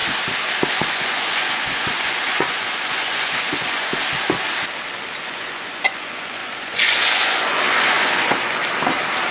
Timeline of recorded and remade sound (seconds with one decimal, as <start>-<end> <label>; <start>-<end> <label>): 0.0-0.7 recorded; 0.7-3.9 remade; 3.9-5.2 recorded; 5.2-8.6 remade; 8.6-9.3 recorded